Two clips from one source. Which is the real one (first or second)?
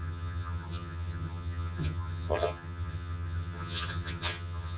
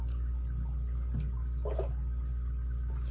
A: second